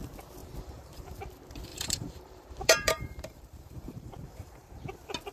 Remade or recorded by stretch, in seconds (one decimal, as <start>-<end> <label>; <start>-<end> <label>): 0.0-0.4 recorded; 0.4-1.2 remade; 1.2-1.7 recorded; 1.7-4.8 remade; 4.8-5.3 recorded